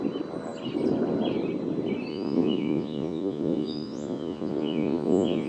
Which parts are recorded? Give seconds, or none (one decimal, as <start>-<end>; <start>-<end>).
0.0-2.1